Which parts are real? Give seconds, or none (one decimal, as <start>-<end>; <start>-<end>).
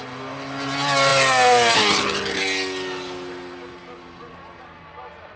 0.0-5.4